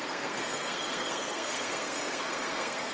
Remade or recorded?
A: remade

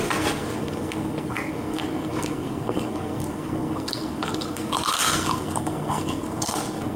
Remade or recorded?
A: remade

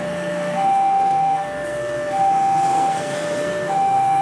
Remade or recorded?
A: remade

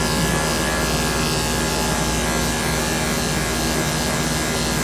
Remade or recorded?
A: recorded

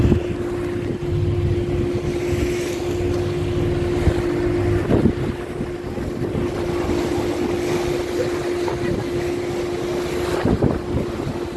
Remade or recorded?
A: recorded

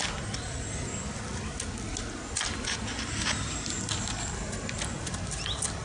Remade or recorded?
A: recorded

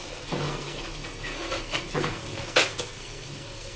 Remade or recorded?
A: remade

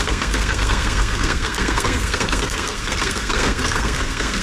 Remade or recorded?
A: remade